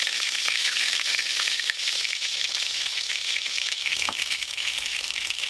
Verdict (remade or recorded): remade